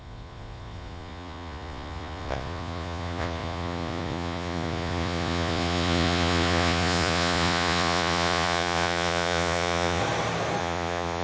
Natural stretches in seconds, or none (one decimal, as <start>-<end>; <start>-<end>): 10.0-10.6